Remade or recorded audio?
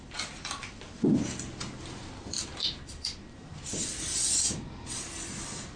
recorded